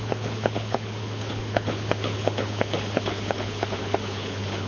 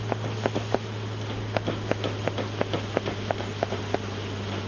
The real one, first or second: second